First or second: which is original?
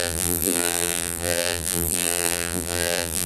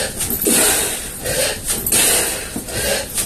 second